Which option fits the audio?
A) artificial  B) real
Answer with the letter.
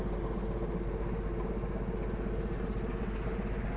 B